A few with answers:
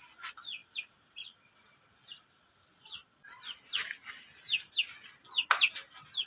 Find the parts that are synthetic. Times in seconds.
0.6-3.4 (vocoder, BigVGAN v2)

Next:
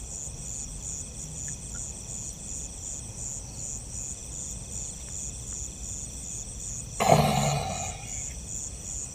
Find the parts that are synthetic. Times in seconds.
none